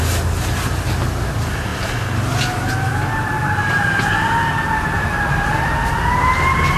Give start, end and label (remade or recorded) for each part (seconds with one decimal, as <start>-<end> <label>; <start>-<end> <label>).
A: 0.0-6.8 recorded